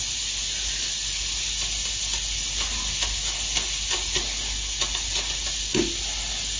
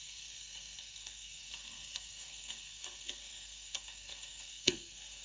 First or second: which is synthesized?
second